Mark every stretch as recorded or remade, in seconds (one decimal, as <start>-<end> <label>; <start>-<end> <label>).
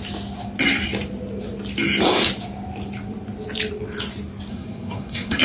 0.0-4.5 recorded; 4.5-5.4 remade